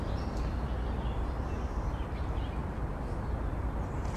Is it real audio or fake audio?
real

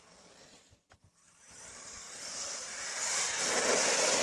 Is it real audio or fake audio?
fake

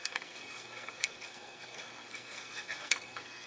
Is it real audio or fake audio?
fake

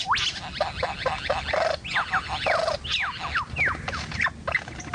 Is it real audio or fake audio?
real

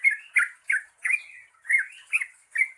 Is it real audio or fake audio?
real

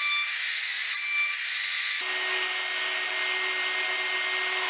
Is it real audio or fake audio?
real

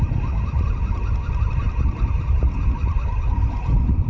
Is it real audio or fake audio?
real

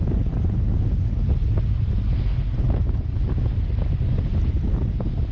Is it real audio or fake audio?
real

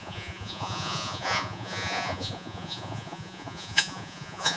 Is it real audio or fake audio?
fake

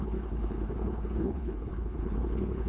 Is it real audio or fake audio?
fake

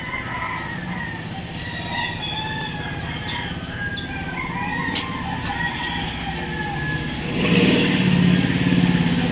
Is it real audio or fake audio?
real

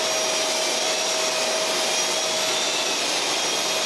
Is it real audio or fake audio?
real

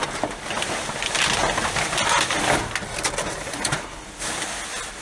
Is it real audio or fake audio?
real